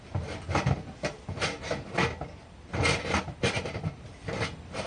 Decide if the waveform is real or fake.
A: real